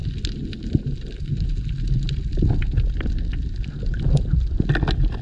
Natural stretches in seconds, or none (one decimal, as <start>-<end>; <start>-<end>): 0.0-5.2